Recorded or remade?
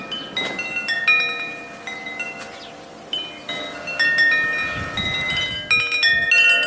recorded